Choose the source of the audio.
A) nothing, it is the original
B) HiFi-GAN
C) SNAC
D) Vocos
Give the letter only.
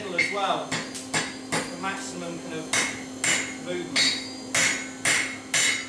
A